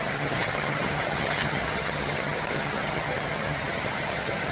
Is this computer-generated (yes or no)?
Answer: yes